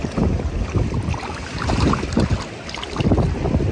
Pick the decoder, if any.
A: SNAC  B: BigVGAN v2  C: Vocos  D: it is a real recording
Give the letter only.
D